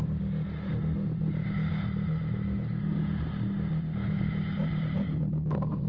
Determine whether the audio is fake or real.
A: real